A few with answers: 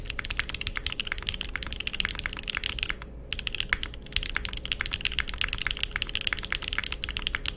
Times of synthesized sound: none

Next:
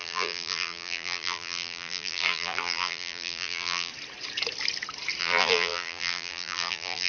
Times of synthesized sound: 0.0-3.9 (vocoder, BigVGAN v2); 5.2-7.1